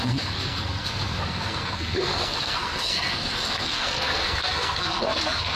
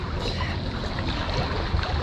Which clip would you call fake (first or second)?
first